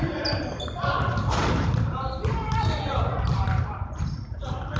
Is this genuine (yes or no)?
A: no